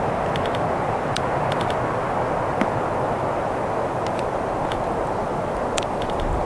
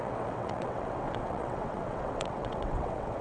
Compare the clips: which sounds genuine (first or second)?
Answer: first